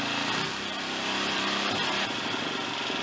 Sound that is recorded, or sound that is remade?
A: recorded